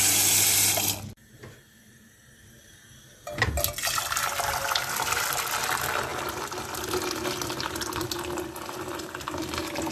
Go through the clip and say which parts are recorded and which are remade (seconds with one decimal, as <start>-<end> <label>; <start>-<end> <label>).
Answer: 0.0-9.9 recorded